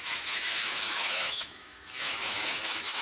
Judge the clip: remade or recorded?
remade